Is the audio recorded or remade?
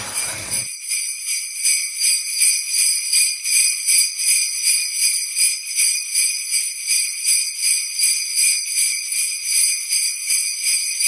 remade